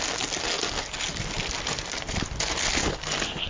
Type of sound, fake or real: real